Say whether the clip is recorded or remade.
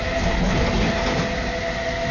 recorded